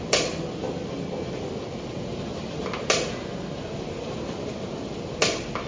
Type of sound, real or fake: real